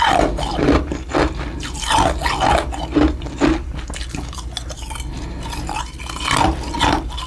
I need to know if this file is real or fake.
real